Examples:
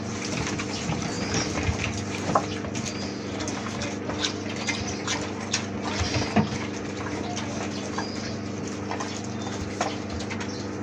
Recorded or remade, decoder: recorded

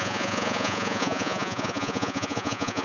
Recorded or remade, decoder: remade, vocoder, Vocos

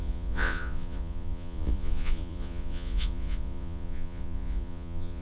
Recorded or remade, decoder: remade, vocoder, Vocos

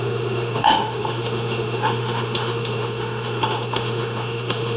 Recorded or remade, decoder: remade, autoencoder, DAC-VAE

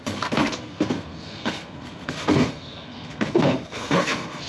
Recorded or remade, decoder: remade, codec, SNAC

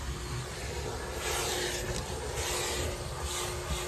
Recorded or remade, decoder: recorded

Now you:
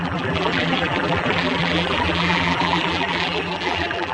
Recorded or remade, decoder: remade, vocoder, BigVGAN v2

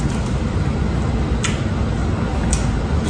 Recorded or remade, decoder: recorded